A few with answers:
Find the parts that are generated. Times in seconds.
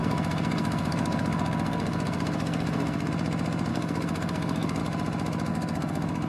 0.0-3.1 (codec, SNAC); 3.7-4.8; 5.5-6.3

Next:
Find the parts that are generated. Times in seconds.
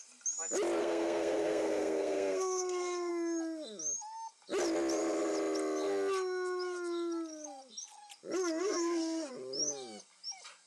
0.8-3.1 (codec, SNAC); 8.6-9.3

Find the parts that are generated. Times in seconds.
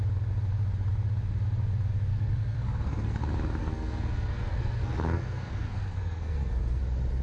2.1-3.2 (codec, SNAC); 3.6-6.8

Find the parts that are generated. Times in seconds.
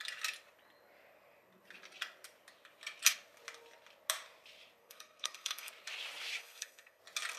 4.8-5.7 (codec, SNAC); 6.4-7.0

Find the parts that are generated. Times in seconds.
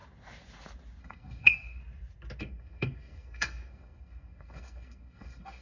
1.0-1.8 (codec, SNAC); 2.4-5.6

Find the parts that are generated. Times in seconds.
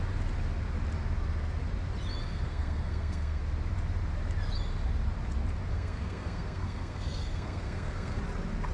2.2-3.4 (codec, SNAC); 5.7-8.2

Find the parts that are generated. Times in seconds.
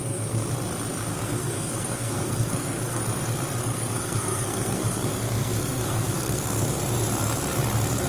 0.0-0.5 (codec, SNAC); 1.1-3.0; 3.6-6.8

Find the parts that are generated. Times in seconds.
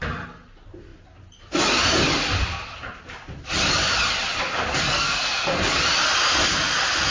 4.9-5.6 (codec, SNAC)